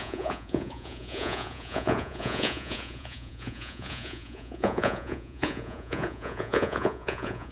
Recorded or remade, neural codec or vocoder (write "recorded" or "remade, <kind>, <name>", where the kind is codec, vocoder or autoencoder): remade, vocoder, Vocos